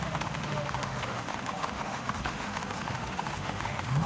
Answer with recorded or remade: remade